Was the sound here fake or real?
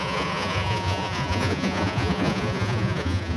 fake